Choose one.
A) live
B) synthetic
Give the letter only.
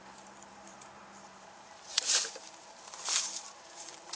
B